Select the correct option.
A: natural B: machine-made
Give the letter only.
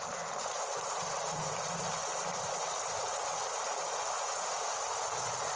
B